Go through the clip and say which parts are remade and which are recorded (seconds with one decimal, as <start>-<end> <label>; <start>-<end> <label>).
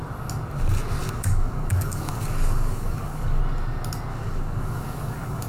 0.0-1.0 recorded; 1.0-3.4 remade; 3.4-4.1 recorded; 4.1-5.5 remade